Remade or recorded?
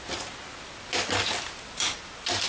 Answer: recorded